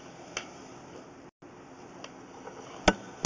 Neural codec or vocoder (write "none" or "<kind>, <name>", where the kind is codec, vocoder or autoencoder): none